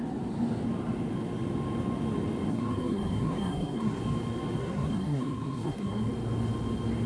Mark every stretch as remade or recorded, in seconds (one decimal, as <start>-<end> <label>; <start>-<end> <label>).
0.0-2.5 recorded; 2.5-4.0 remade; 4.0-4.6 recorded; 4.6-6.1 remade; 6.1-7.1 recorded